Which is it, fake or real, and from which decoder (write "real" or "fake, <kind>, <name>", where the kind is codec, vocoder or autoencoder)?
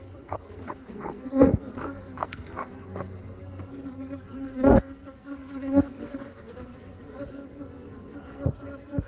fake, codec, SNAC